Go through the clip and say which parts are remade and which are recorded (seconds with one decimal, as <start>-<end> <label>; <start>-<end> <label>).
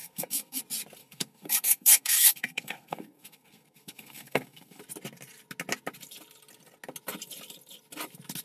0.0-0.6 remade; 0.6-1.0 recorded; 1.0-4.8 remade; 4.8-8.4 recorded